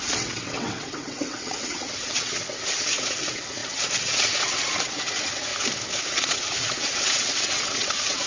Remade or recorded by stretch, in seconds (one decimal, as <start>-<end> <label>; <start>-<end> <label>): 0.0-5.5 remade; 5.5-6.1 recorded; 6.1-8.3 remade